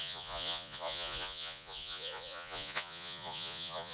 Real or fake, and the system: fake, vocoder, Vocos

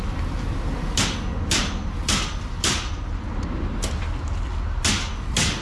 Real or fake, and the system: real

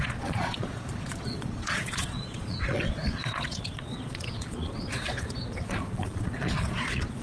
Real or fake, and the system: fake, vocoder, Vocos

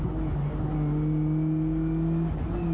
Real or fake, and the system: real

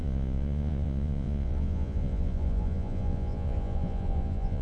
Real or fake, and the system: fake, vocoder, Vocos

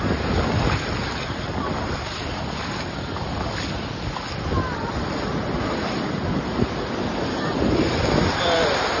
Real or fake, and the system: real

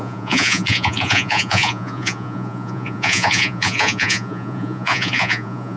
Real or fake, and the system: fake, vocoder, Vocos